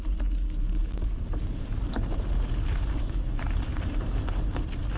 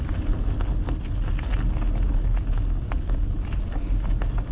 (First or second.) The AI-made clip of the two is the first